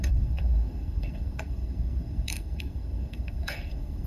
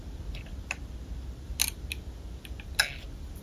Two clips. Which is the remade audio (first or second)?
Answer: first